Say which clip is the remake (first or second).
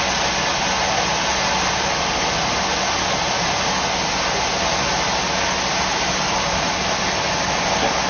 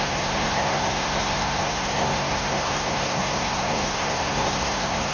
second